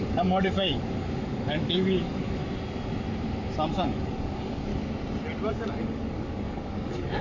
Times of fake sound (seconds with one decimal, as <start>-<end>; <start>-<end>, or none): 0.0-2.4; 3.7-4.7; 5.5-7.2